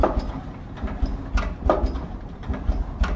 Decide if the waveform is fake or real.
real